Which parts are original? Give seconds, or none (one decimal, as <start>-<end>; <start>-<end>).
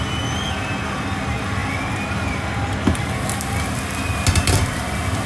0.0-5.3